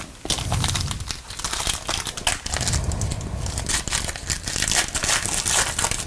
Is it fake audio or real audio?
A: real